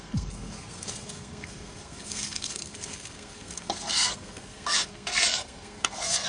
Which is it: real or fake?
fake